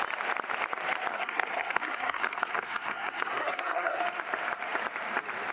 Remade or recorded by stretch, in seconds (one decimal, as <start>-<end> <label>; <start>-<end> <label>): 0.0-1.1 recorded; 1.1-4.0 remade; 4.0-5.5 recorded